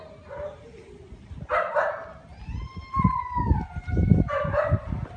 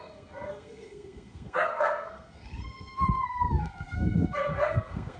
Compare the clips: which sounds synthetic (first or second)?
second